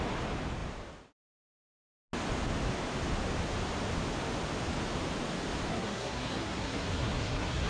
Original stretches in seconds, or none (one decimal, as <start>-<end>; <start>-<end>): 0.0-5.7